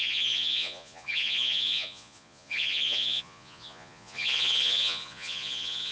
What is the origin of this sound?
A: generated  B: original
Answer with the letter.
A